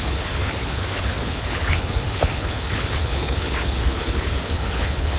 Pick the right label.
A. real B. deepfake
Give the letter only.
B